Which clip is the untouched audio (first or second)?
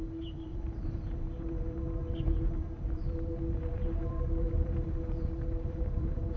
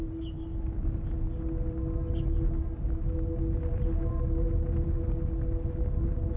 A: second